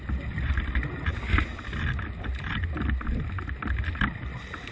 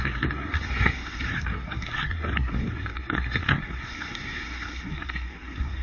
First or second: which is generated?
second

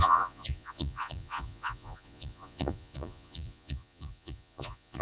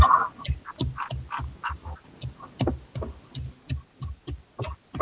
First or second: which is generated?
first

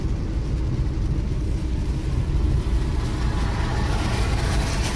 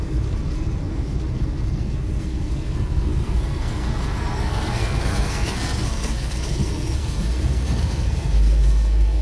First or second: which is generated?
second